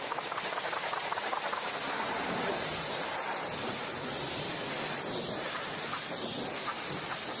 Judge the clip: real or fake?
fake